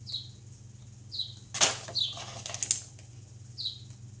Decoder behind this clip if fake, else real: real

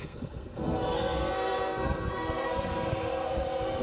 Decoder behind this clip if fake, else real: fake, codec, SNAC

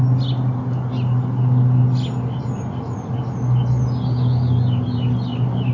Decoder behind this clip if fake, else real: real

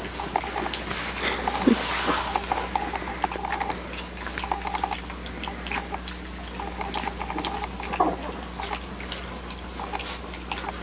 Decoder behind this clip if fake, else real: real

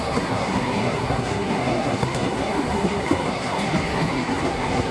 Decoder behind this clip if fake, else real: fake, codec, SNAC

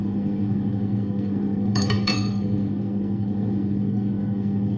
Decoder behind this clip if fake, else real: fake, codec, SNAC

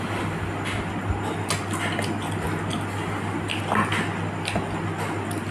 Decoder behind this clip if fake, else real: real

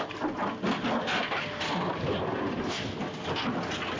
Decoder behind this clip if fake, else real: real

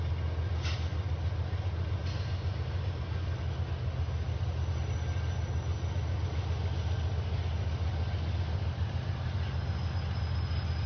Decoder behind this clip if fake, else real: real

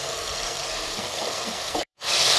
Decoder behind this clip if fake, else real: fake, codec, SNAC